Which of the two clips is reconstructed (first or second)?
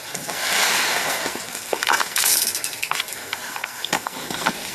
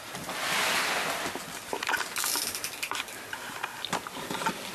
first